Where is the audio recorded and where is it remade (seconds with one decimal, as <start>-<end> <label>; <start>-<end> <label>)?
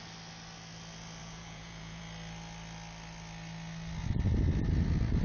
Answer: 0.0-1.2 recorded; 1.2-2.0 remade; 2.0-5.2 recorded